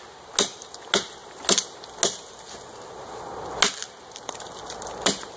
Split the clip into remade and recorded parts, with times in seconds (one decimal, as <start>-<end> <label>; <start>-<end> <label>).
0.0-5.4 recorded